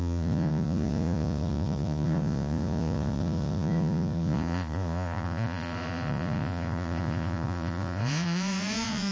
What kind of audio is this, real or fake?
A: fake